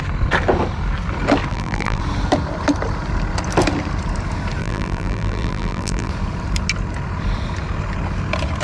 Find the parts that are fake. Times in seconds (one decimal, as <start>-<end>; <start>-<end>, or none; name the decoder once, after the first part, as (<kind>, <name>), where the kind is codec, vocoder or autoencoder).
1.5-2.0 (vocoder, BigVGAN v2); 4.6-6.1